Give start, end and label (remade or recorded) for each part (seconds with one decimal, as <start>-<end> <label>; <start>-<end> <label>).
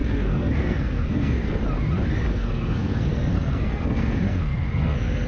0.0-1.6 remade; 1.6-2.3 recorded; 2.3-5.3 remade